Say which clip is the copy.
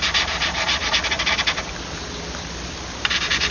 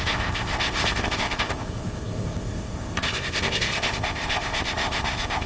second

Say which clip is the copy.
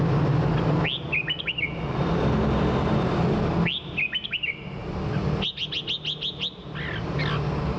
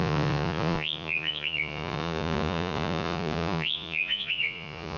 second